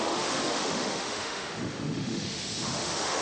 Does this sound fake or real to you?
fake